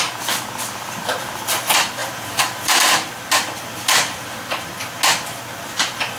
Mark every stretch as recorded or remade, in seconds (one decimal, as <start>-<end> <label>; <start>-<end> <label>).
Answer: 0.0-2.0 recorded; 2.0-2.8 remade; 2.8-3.7 recorded; 3.7-4.9 remade; 4.9-6.2 recorded